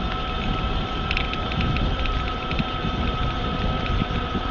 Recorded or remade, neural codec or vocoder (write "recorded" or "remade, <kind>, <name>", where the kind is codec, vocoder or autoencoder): recorded